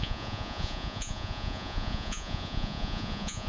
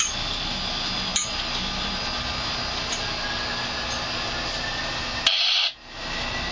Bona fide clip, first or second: second